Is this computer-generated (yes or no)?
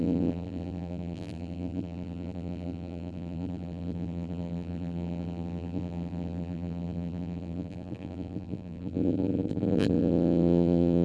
yes